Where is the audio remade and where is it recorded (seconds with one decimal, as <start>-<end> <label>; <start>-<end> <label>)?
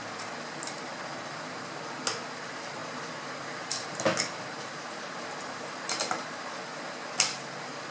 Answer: 0.0-7.9 recorded